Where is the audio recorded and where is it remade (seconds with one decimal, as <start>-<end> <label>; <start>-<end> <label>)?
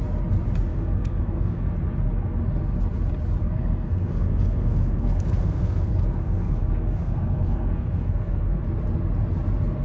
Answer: 0.0-0.7 recorded; 0.7-1.7 remade; 1.7-3.4 recorded; 3.4-8.6 remade; 8.6-9.8 recorded